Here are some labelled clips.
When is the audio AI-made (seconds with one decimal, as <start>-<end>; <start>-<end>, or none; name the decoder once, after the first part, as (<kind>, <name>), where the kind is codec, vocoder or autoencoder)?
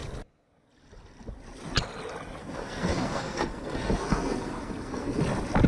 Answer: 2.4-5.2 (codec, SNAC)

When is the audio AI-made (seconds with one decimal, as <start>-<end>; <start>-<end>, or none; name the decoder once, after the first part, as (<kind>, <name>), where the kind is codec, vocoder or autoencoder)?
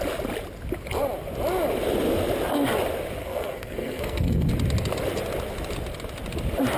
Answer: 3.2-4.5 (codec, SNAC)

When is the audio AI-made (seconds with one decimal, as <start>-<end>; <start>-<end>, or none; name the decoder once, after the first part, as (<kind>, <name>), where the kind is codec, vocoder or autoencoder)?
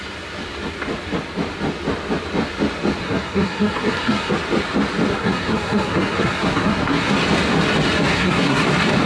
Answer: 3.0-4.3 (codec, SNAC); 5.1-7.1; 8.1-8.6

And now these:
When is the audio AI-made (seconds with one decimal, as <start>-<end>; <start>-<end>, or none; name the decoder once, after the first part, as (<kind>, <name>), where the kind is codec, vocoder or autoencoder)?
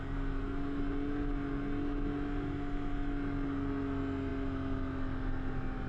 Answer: none